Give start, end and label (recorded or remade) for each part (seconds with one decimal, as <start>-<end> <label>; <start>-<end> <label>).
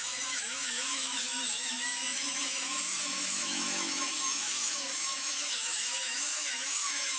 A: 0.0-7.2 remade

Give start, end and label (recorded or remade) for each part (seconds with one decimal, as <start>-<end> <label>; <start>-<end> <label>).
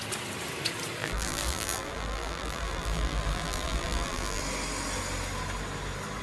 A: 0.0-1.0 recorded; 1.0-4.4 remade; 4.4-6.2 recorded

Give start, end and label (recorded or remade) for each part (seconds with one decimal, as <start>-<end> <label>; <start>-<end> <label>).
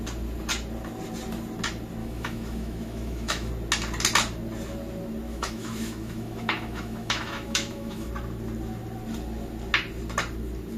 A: 0.0-2.0 recorded; 2.0-3.5 remade; 3.5-5.3 recorded; 5.3-8.1 remade; 8.1-10.8 recorded